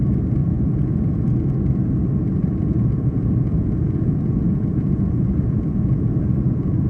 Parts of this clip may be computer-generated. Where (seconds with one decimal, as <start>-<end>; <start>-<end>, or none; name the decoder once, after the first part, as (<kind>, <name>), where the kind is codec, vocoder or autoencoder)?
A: 0.4-1.5 (vocoder, Vocos); 2.7-6.9